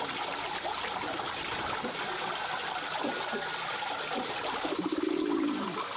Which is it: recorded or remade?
recorded